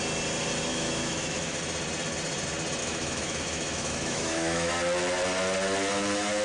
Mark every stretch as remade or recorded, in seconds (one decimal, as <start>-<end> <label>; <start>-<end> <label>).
0.0-0.7 recorded; 0.7-1.6 remade; 1.6-2.8 recorded; 2.8-4.7 remade; 4.7-6.4 recorded